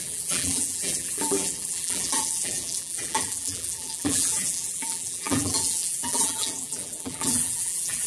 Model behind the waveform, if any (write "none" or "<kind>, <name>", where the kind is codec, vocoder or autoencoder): vocoder, BigVGAN v2